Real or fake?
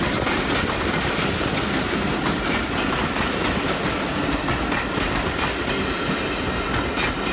real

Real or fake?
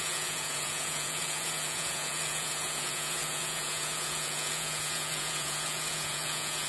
fake